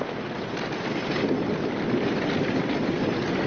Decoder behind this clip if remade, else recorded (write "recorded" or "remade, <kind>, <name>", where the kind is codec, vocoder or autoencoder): recorded